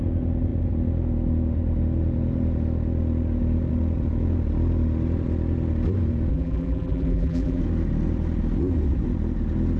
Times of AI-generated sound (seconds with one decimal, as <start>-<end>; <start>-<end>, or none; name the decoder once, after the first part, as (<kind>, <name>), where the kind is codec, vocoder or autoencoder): 6.3-7.6 (vocoder, BigVGAN v2)